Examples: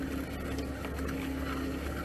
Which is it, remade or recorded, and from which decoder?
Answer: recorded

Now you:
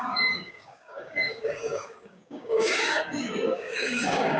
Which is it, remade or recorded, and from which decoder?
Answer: remade, codec, DAC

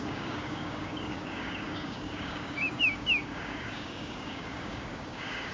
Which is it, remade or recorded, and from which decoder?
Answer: remade, codec, DAC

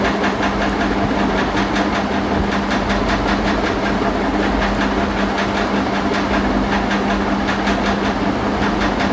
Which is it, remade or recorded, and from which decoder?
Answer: recorded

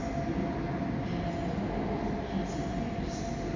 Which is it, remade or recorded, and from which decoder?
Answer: recorded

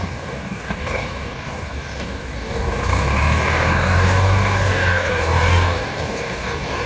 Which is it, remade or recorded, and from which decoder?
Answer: remade, codec, DAC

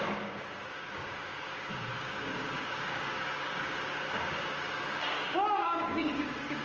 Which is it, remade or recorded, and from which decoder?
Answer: remade, codec, DAC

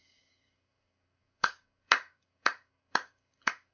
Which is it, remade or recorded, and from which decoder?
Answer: remade, codec, DAC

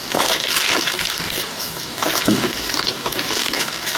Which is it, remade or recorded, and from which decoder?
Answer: remade, codec, DAC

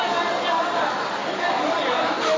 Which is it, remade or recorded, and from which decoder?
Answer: recorded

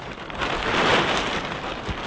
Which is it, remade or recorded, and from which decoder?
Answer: recorded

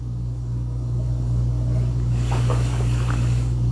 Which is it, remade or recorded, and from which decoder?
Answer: remade, codec, DAC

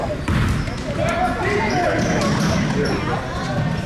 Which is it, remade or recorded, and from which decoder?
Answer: recorded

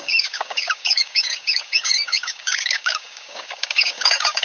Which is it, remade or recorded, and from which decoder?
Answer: remade, codec, DAC